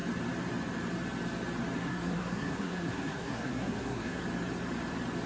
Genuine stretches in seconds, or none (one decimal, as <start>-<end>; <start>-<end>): 0.0-1.8; 4.2-5.3